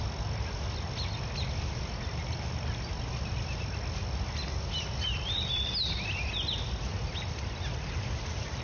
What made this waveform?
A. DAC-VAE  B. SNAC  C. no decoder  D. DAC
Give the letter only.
C